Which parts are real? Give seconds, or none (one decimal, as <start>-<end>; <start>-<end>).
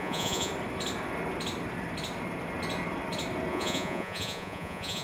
0.5-3.5